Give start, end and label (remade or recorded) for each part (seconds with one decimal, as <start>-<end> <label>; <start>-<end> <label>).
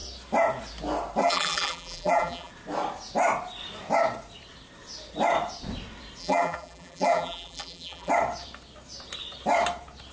0.0-1.2 recorded; 1.2-2.5 remade; 2.5-6.2 recorded; 6.2-8.1 remade; 8.1-10.1 recorded